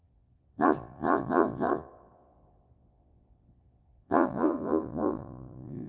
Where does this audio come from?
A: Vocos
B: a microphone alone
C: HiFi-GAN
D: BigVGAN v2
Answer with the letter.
A